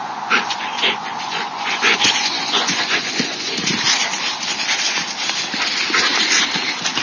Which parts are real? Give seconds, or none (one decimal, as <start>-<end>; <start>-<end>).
3.5-7.0